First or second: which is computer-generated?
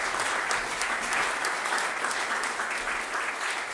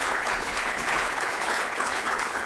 second